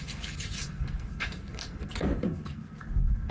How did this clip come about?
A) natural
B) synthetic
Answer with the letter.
B